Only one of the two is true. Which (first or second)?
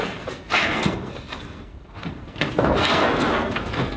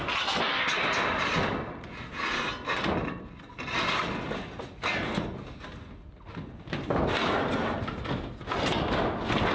second